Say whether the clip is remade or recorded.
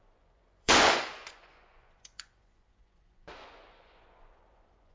remade